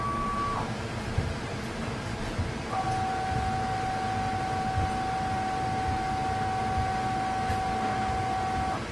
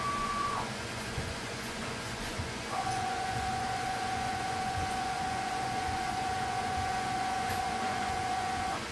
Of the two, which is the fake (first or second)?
second